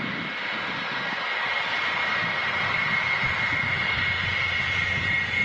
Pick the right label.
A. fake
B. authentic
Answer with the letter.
B